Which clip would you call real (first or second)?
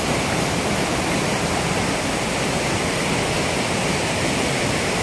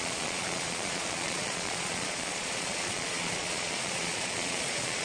first